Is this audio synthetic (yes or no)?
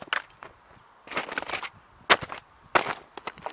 no